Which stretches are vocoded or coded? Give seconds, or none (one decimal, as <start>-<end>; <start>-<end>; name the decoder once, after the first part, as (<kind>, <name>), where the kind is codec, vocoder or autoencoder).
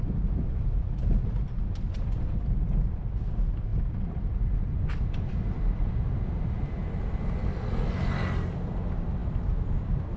none